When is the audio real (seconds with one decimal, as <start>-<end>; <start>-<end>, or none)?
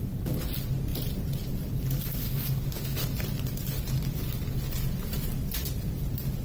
0.0-2.2; 3.0-6.4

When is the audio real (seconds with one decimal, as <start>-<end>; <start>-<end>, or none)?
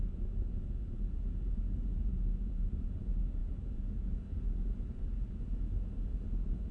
0.0-6.7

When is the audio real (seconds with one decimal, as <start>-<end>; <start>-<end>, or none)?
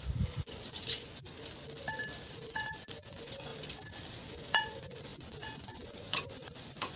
1.3-2.4; 3.5-4.1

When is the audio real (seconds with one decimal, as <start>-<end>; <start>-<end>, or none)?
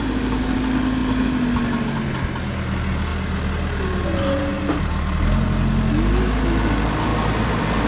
0.0-7.9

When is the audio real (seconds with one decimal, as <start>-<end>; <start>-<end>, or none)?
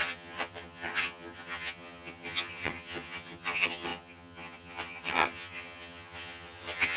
none